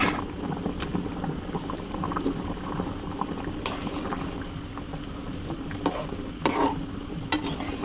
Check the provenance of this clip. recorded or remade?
recorded